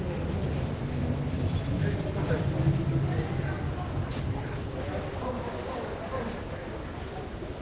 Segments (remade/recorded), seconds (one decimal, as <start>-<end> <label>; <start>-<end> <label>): 0.0-4.0 recorded; 4.0-4.9 remade; 4.9-7.6 recorded